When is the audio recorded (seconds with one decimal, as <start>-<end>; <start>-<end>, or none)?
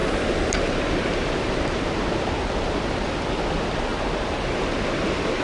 3.1-3.9; 4.5-5.4